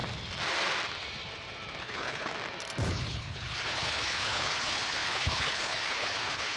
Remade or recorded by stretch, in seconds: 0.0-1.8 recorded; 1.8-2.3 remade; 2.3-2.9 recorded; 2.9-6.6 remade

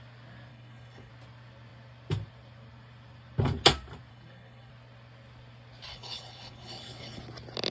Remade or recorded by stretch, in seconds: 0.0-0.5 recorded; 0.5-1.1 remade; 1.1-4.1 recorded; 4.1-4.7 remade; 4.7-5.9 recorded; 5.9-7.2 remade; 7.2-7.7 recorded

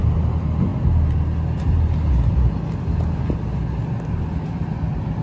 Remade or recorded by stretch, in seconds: 0.0-5.2 recorded

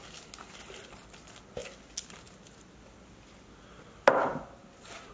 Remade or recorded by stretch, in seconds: 0.0-5.1 recorded

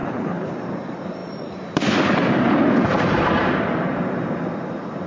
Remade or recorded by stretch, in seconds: 0.0-0.5 remade; 0.5-5.1 recorded

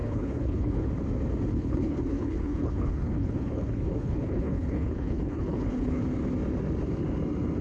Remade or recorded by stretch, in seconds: 0.0-0.9 remade; 0.9-1.5 recorded; 1.5-6.0 remade; 6.0-7.6 recorded

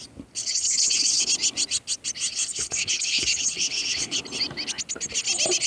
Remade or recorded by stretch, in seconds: 0.0-0.4 recorded; 0.4-1.3 remade; 1.3-2.3 recorded; 2.3-4.2 remade; 4.2-5.7 recorded